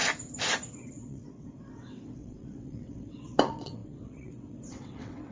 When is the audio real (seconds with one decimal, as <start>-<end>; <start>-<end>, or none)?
0.0-0.7